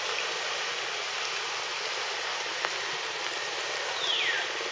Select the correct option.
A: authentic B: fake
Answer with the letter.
A